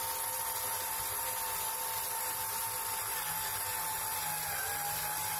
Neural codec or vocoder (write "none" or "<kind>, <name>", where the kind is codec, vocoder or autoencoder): none